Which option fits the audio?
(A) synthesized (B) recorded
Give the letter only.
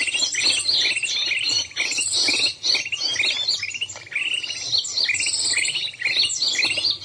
B